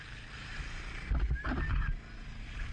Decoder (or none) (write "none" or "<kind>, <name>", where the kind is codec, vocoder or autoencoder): none